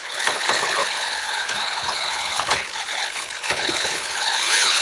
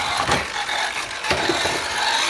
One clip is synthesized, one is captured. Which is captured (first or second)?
second